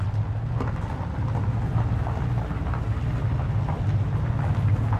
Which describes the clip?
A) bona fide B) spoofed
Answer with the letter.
A